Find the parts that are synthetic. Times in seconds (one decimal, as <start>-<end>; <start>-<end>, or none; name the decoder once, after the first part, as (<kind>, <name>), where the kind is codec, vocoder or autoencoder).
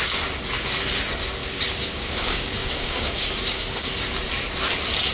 1.4-3.8 (codec, DAC)